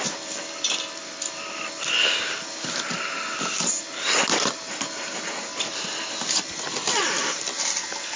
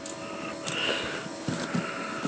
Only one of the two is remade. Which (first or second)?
first